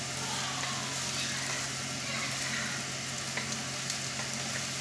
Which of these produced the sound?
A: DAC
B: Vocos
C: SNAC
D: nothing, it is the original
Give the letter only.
D